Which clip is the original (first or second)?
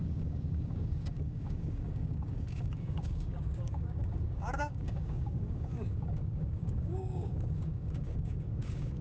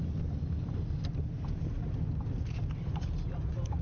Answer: second